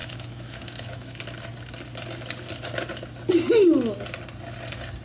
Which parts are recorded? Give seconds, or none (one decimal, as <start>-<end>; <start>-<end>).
1.2-5.0